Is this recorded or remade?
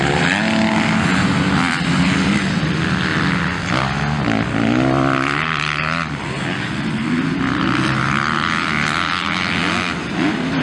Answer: recorded